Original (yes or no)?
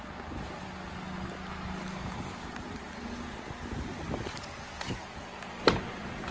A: yes